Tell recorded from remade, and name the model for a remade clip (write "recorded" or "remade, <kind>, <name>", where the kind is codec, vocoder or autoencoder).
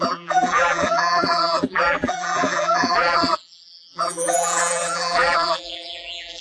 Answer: remade, vocoder, BigVGAN v2